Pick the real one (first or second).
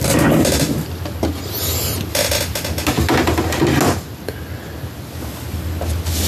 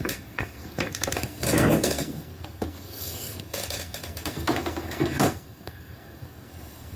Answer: first